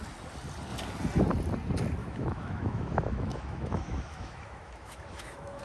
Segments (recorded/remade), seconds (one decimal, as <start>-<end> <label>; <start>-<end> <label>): 0.0-2.0 recorded; 2.0-5.6 remade